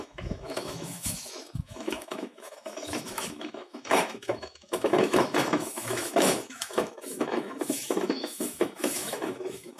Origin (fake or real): fake